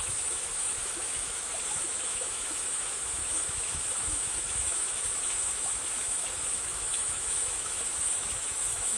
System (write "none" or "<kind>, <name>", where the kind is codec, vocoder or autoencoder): autoencoder, DAC-VAE